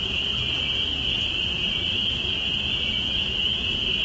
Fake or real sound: real